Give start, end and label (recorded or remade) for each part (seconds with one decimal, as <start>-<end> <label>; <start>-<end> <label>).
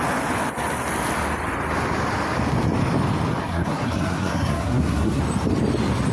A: 0.0-3.4 recorded; 3.4-5.2 remade; 5.2-6.1 recorded